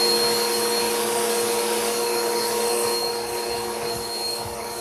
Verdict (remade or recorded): remade